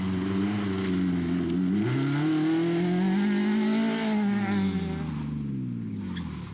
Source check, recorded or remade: recorded